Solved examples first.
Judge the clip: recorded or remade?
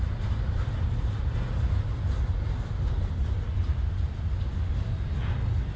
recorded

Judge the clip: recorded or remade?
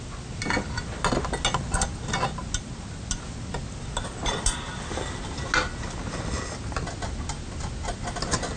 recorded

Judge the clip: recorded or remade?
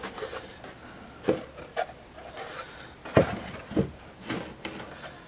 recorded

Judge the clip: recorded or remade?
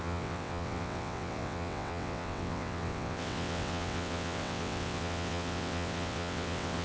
remade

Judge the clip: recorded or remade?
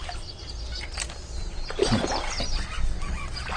recorded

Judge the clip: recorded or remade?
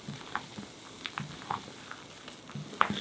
recorded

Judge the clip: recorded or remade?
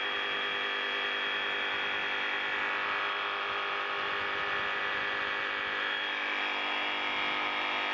recorded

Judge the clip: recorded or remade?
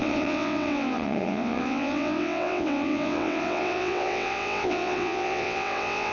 remade